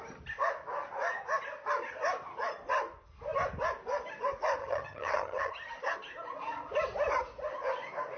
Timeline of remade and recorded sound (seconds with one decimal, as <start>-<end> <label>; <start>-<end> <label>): 0.0-4.6 recorded; 4.6-5.5 remade; 5.5-8.2 recorded